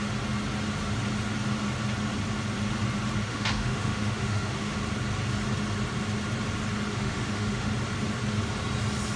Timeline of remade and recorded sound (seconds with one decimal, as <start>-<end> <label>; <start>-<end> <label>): 0.0-3.3 recorded; 3.3-4.8 remade; 4.8-6.9 recorded; 6.9-7.7 remade; 7.7-9.2 recorded